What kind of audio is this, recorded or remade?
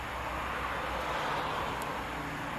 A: recorded